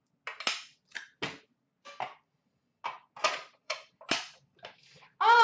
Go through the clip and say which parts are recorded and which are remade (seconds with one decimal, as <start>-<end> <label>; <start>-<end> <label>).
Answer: 0.0-3.2 recorded; 3.2-3.9 remade; 3.9-5.4 recorded